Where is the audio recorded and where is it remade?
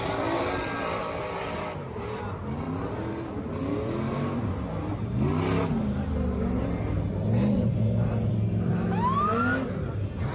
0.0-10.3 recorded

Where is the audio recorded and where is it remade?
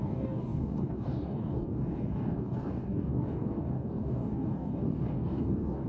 0.0-5.9 remade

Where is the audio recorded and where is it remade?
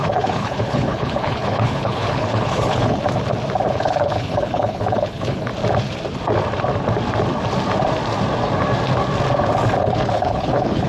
0.0-3.0 remade; 3.0-3.7 recorded; 3.7-5.5 remade; 5.5-9.8 recorded; 9.8-10.9 remade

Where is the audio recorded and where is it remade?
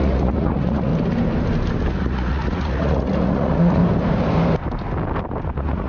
0.0-0.9 remade; 0.9-1.9 recorded; 1.9-3.8 remade; 3.8-5.5 recorded; 5.5-5.9 remade